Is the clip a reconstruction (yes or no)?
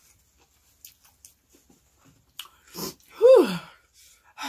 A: no